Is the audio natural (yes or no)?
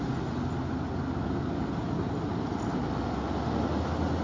yes